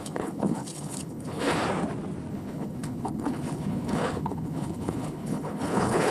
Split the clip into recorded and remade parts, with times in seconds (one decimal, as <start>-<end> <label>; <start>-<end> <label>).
0.0-1.6 remade; 1.6-2.3 recorded; 2.3-6.1 remade